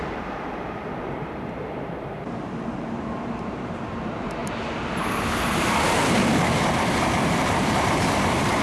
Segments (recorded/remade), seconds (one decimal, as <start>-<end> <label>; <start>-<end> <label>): 0.0-4.4 remade; 4.4-5.6 recorded; 5.6-6.3 remade; 6.3-7.3 recorded; 7.3-8.6 remade